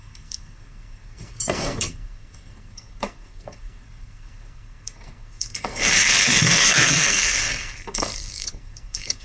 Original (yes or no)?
no